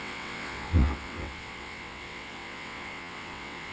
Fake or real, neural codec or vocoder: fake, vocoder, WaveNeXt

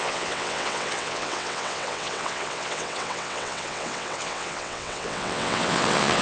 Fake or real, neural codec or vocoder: fake, vocoder, WaveNeXt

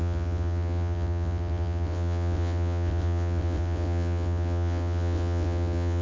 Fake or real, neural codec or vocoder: fake, vocoder, WaveNeXt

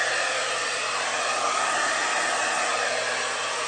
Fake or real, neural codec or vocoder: real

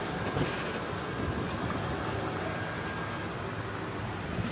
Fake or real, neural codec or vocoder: real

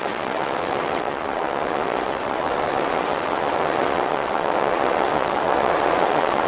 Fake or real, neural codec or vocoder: fake, vocoder, WaveNeXt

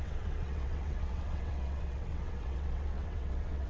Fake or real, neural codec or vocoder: fake, vocoder, WaveNeXt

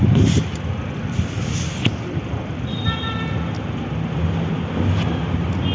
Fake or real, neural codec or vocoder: real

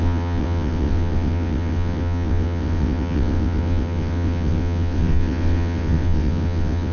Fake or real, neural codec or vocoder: fake, vocoder, WaveNeXt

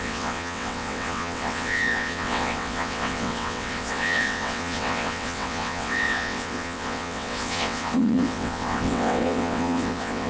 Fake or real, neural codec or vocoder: fake, vocoder, WaveNeXt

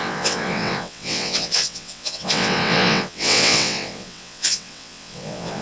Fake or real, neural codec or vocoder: fake, vocoder, WaveNeXt